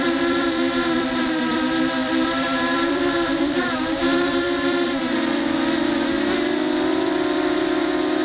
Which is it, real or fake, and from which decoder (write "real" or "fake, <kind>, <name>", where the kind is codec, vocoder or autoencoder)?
fake, vocoder, BigVGAN v2